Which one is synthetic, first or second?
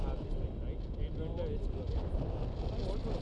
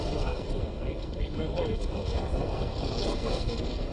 second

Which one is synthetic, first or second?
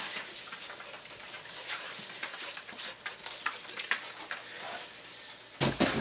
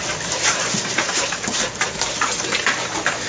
second